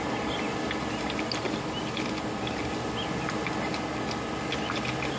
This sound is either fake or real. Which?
real